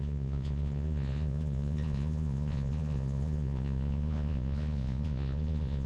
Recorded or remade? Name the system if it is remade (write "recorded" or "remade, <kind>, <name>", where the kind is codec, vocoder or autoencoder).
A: remade, vocoder, Vocos